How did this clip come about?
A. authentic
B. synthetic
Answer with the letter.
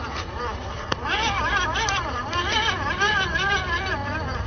A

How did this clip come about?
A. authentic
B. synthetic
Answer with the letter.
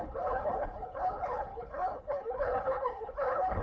B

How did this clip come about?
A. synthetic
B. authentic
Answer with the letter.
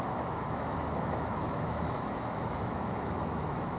A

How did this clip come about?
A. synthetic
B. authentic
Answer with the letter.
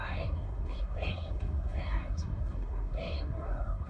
A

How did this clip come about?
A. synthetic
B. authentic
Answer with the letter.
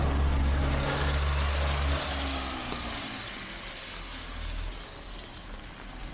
B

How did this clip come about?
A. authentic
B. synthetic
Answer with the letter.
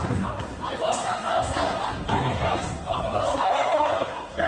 B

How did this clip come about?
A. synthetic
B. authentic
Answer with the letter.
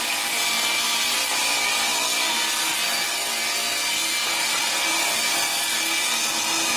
B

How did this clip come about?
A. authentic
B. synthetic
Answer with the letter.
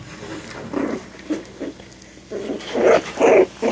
A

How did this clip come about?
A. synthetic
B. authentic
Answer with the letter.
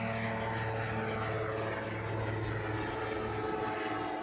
B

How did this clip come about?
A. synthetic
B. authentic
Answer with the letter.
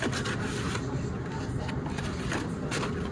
B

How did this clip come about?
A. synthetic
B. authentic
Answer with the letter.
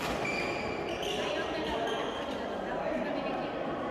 B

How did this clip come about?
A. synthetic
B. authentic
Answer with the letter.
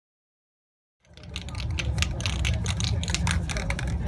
B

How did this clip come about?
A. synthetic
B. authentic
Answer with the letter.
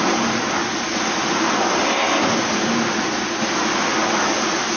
B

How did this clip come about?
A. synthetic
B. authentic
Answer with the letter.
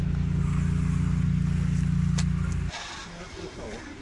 B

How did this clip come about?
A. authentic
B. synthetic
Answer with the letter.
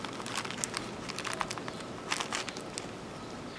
A